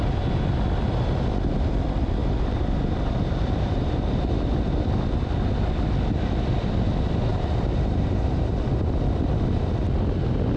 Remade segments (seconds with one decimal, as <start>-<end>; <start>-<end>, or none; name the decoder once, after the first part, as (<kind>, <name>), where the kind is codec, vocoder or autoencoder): 2.2-4.3 (vocoder, BigVGAN v2); 7.3-8.5